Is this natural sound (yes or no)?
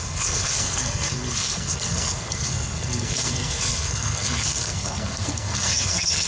no